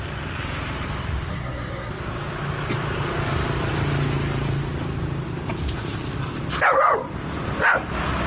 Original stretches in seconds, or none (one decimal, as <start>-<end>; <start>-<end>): 0.0-1.3; 1.9-8.3